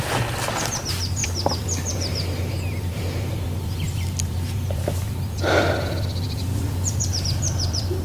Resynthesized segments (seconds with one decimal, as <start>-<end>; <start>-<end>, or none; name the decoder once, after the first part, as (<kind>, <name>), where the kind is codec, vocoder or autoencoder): 0.0-8.0 (vocoder, BigVGAN v2)